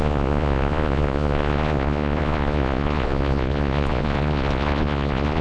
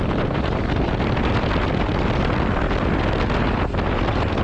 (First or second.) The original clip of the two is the second